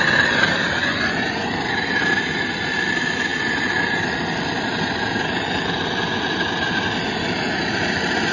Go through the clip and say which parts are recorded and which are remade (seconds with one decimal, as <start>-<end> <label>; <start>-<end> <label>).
0.0-0.8 recorded; 0.8-1.5 remade; 1.5-8.3 recorded